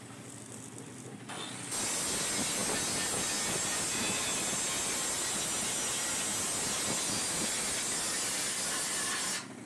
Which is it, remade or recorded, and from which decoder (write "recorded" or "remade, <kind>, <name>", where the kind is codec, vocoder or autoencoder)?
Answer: recorded